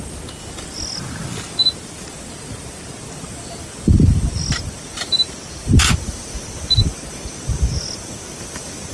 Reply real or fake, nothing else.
fake